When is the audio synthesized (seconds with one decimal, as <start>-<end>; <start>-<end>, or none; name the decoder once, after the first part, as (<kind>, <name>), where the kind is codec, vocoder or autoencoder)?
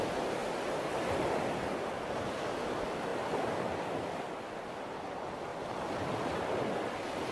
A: none